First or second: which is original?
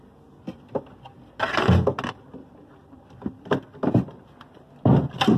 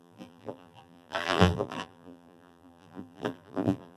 first